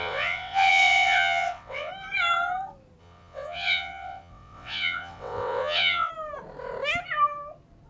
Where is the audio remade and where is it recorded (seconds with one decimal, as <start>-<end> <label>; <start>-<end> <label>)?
0.0-1.9 remade; 1.9-3.0 recorded; 3.0-6.1 remade; 6.1-7.9 recorded